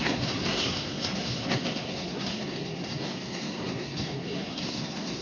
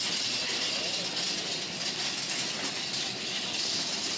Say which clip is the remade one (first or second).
first